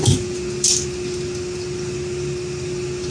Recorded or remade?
recorded